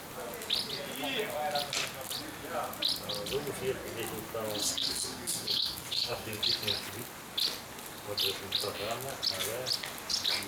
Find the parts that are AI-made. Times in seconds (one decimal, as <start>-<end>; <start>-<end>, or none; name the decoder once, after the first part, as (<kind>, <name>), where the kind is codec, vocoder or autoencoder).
4.6-6.4 (codec, SNAC)